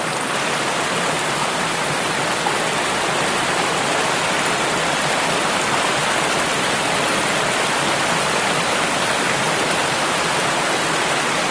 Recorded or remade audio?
recorded